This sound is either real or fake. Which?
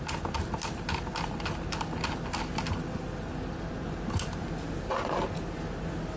real